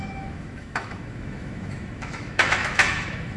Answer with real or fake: fake